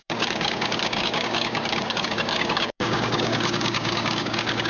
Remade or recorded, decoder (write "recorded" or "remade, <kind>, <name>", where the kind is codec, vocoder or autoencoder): remade, codec, DAC